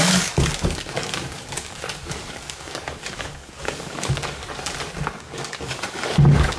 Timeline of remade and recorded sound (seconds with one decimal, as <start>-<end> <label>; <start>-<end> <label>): 0.0-4.4 remade; 4.4-4.9 recorded; 4.9-6.6 remade